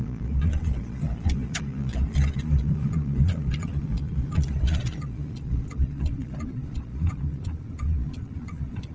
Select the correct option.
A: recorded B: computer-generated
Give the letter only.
B